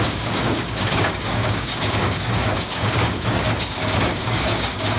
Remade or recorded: remade